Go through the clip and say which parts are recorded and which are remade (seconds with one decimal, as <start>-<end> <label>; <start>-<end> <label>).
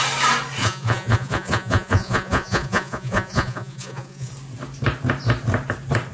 0.0-0.6 recorded; 0.6-4.3 remade; 4.3-6.1 recorded